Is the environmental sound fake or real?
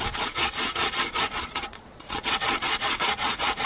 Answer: fake